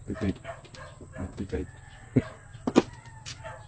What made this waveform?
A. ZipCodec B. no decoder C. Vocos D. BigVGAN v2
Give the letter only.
B